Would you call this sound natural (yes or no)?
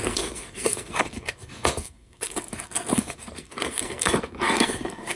no